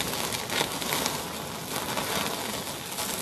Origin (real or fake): real